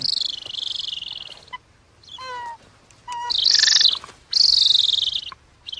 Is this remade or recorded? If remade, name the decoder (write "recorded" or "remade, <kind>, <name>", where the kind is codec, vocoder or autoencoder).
recorded